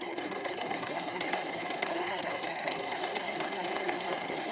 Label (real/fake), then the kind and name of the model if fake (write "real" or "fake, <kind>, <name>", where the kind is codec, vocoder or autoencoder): fake, codec, SNAC